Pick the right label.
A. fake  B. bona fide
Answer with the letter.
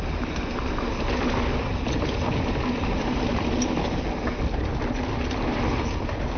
B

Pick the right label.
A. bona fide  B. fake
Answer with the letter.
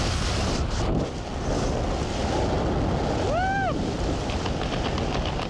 A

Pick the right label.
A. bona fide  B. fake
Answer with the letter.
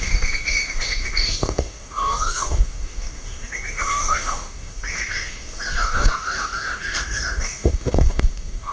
B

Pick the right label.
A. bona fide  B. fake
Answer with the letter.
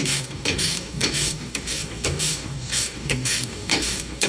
B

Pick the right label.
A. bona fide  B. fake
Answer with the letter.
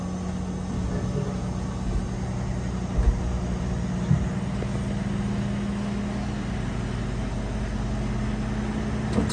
A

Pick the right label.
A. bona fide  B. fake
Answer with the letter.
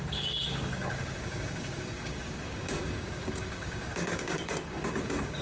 B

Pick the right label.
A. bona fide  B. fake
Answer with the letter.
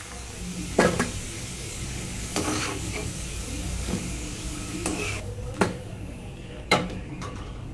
B